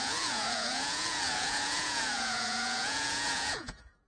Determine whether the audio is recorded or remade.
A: remade